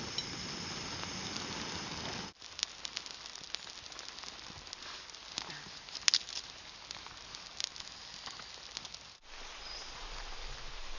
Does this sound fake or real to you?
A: real